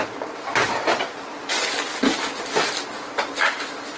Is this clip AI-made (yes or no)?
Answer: no